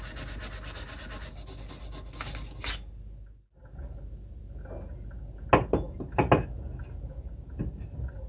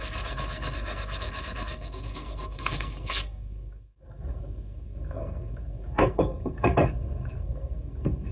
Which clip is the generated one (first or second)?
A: second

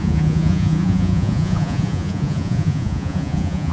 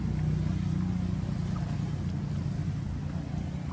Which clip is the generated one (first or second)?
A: first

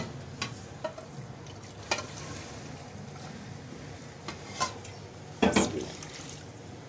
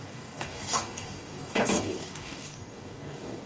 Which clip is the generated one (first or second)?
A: second